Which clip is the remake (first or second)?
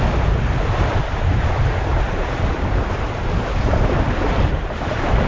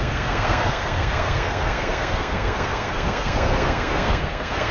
second